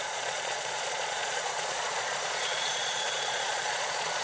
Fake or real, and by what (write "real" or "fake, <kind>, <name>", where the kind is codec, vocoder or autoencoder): fake, vocoder, Vocos